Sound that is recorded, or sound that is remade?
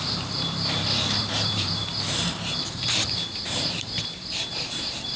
remade